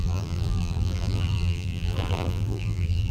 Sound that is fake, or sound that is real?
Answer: fake